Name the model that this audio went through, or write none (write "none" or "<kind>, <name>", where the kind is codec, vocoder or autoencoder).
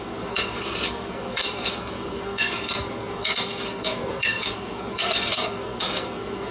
codec, SNAC